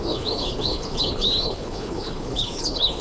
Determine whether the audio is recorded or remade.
remade